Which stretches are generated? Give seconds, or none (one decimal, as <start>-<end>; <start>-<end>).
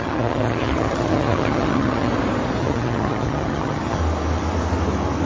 0.0-2.1; 2.6-4.0